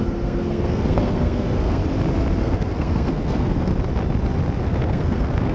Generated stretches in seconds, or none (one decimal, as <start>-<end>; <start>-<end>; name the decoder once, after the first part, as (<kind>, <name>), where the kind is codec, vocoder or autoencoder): 0.0-1.8 (codec, SNAC); 2.4-3.7; 4.6-5.5